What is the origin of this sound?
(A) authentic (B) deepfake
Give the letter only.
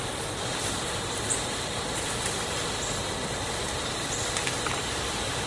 A